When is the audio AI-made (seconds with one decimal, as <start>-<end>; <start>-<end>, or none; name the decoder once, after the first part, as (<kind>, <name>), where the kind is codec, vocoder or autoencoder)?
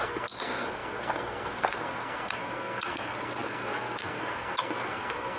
0.0-5.4 (codec, SNAC)